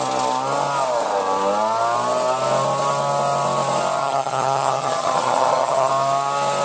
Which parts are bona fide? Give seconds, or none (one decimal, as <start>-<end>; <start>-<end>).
0.0-4.0; 5.9-6.6